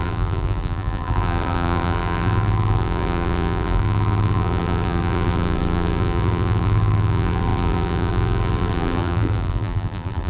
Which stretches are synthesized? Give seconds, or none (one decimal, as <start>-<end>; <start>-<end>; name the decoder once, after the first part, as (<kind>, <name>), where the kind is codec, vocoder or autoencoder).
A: 0.0-10.3 (vocoder, BigVGAN v2)